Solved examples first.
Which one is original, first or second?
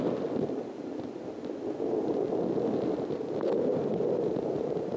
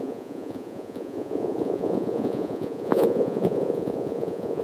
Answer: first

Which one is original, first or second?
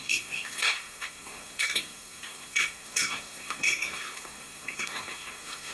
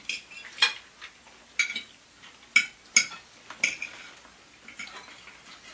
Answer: second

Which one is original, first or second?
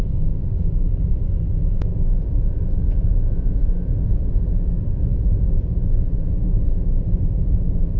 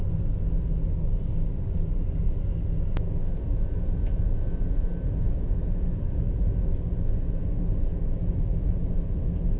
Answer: second